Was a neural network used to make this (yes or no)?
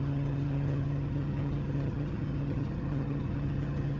yes